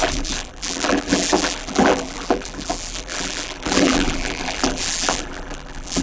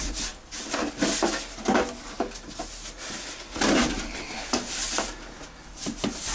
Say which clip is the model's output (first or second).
first